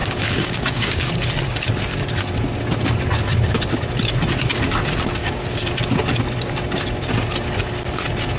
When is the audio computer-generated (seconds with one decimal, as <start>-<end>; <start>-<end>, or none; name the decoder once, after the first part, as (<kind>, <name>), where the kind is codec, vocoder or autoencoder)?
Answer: 0.0-1.1 (codec, DAC); 5.2-5.7